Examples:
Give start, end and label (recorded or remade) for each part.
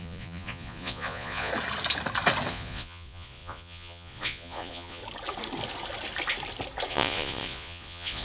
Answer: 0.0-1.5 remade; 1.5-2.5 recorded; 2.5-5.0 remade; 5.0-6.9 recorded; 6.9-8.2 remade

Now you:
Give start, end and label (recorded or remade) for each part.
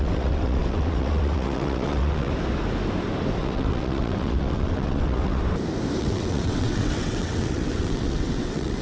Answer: 0.0-2.3 remade; 2.3-3.4 recorded; 3.4-5.4 remade; 5.4-6.0 recorded; 6.0-8.8 remade